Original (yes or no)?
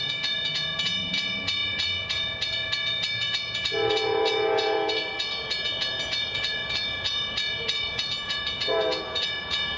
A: no